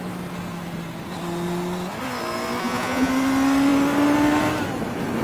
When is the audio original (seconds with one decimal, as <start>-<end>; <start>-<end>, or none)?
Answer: 0.0-2.6; 3.1-5.2